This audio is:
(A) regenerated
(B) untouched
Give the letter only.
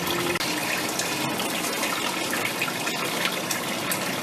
B